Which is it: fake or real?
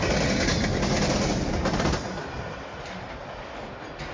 real